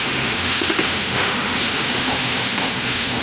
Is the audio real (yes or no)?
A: no